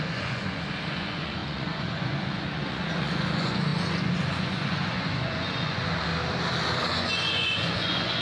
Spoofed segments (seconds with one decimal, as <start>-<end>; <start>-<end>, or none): 0.0-6.1; 6.8-8.2